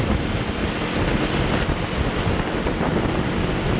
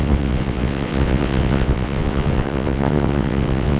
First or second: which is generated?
second